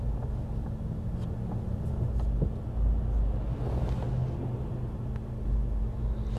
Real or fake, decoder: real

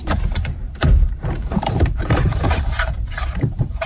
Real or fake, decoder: fake, vocoder, BigVGAN v2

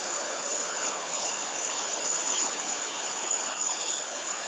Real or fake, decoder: fake, codec, HILCodec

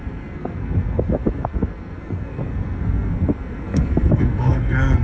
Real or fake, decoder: fake, codec, SNAC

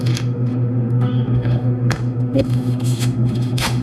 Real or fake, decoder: fake, autoencoder, DAC-VAE